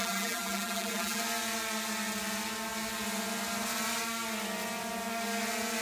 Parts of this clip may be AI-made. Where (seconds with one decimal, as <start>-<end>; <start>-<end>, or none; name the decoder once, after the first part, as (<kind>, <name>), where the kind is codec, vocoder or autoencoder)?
0.0-1.2 (vocoder, BigVGAN v2)